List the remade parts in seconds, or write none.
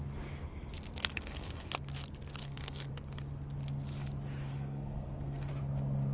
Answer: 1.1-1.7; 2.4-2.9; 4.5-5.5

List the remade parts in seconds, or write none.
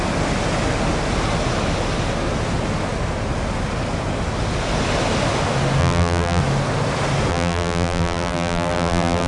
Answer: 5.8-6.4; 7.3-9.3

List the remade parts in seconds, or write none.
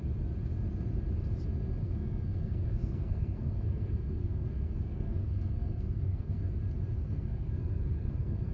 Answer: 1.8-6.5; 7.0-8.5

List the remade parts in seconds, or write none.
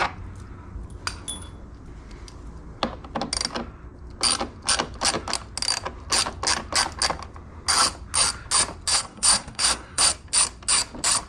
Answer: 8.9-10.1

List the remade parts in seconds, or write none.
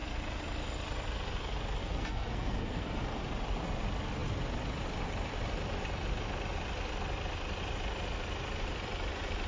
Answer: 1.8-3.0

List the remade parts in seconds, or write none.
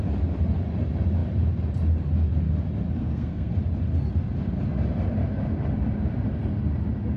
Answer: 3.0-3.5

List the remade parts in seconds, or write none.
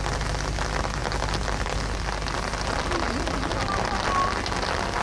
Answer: none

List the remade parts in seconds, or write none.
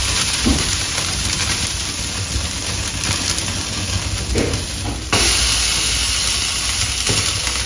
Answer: 0.0-1.8